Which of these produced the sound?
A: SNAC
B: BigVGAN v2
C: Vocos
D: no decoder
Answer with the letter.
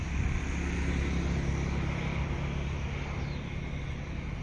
D